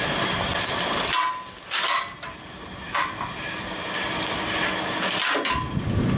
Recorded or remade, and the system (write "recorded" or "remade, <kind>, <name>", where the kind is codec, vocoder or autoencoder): recorded